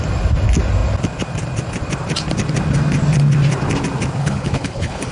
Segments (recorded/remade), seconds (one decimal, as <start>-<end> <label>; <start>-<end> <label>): 0.0-4.2 recorded; 4.2-5.1 remade